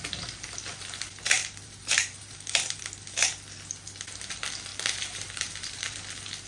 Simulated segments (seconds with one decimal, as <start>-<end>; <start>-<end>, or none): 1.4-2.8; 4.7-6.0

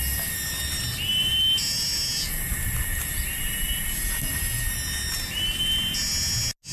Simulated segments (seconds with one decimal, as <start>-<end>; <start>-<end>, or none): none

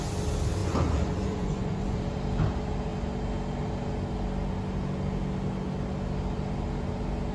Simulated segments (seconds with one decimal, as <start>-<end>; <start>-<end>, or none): 0.6-2.0

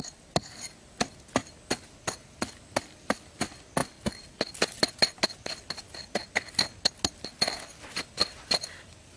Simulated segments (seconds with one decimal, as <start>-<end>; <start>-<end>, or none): none